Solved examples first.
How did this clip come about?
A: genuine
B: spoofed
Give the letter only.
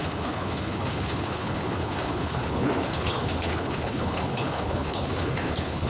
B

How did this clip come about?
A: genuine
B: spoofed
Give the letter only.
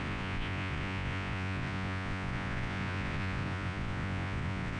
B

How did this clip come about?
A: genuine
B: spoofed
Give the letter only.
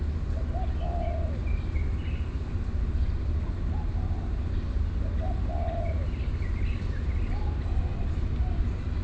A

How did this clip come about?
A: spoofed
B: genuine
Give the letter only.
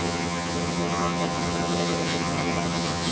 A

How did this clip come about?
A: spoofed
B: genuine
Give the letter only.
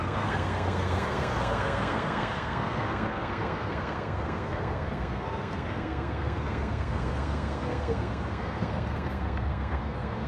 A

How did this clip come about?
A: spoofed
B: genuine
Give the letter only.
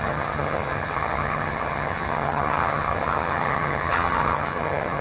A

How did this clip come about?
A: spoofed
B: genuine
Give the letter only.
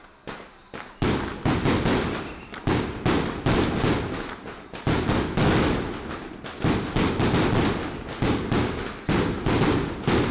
B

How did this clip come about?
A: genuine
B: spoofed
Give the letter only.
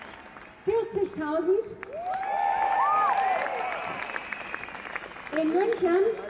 A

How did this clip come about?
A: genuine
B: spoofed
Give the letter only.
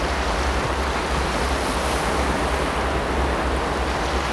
A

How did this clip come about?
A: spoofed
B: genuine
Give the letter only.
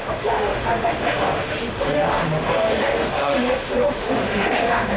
A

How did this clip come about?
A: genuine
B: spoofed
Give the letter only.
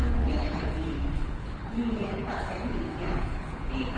B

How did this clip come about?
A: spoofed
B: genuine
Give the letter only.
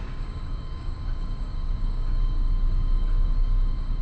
A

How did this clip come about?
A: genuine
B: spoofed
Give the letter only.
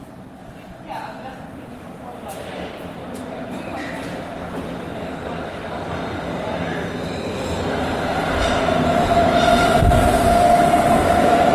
A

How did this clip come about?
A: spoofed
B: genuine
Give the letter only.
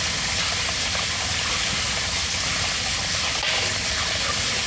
B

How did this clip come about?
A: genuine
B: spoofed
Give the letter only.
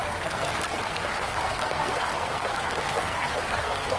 B